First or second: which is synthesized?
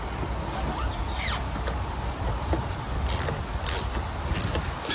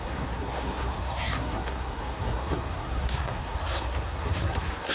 second